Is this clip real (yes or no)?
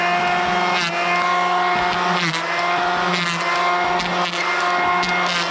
yes